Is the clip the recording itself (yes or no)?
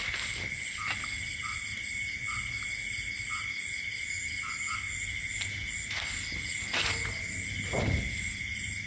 yes